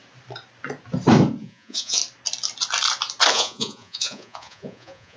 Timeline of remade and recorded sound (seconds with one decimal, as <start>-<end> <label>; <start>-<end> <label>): 0.0-1.4 recorded; 1.4-2.0 remade; 2.0-3.3 recorded; 3.3-5.2 remade